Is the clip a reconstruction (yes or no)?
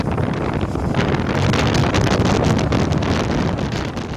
no